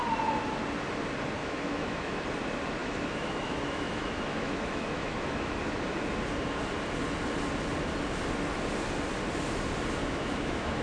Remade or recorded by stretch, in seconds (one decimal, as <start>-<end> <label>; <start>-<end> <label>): 0.0-1.4 recorded; 1.4-2.2 remade; 2.2-2.8 recorded; 2.8-5.6 remade; 5.6-10.0 recorded; 10.0-10.8 remade